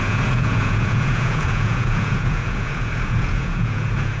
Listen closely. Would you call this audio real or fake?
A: fake